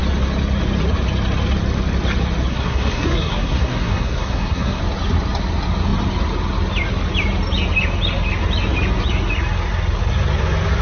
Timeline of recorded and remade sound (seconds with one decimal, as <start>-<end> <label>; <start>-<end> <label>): 0.0-2.5 recorded; 2.5-4.8 remade; 4.8-10.8 recorded